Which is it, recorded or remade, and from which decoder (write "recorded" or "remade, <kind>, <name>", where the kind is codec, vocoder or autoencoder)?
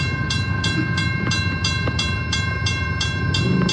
recorded